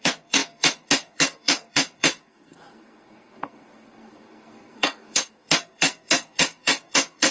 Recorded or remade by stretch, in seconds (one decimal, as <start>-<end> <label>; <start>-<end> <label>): 0.0-7.3 remade